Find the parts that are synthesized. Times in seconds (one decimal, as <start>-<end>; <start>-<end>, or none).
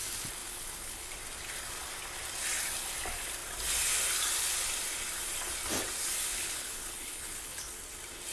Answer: 0.4-1.1; 6.3-7.6